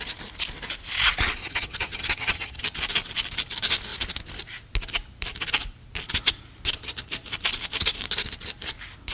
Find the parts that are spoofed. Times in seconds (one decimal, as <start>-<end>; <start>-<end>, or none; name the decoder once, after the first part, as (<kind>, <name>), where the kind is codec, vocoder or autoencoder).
1.4-2.6 (vocoder, HiFi-GAN)